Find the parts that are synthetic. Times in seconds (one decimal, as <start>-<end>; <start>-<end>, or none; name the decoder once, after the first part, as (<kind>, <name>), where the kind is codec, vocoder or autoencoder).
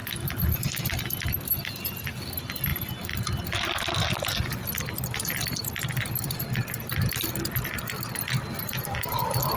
0.0-1.1 (vocoder, BigVGAN v2)